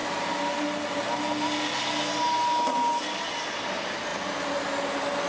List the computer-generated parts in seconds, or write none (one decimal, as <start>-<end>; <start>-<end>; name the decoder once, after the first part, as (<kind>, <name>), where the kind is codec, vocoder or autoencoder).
none